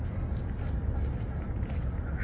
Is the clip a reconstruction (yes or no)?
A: no